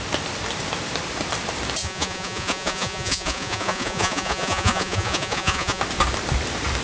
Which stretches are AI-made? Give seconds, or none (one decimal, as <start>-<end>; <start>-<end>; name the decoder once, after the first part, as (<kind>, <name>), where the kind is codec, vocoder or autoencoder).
1.8-5.8 (vocoder, Vocos)